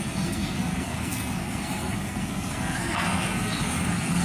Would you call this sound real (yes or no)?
no